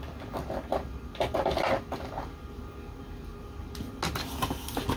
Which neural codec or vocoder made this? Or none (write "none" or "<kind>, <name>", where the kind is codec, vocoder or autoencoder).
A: none